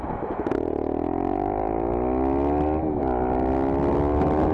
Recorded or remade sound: recorded